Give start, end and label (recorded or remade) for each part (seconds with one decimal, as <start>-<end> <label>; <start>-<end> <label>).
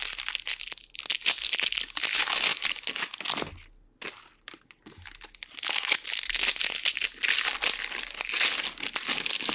0.0-9.5 recorded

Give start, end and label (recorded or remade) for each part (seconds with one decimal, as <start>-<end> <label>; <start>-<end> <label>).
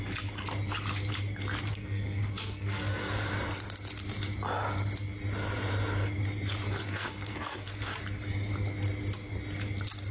0.0-1.7 recorded; 1.7-3.1 remade; 3.1-6.8 recorded; 6.8-8.0 remade; 8.0-10.1 recorded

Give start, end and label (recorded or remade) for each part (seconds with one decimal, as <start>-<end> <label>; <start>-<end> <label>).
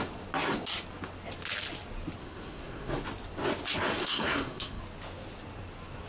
0.0-2.2 recorded; 2.2-2.9 remade; 2.9-4.0 recorded; 4.0-4.8 remade; 4.8-6.1 recorded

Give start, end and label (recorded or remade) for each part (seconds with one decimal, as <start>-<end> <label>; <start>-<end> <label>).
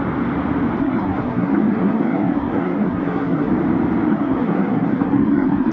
0.0-0.8 recorded; 0.8-3.5 remade; 3.5-4.1 recorded; 4.1-5.7 remade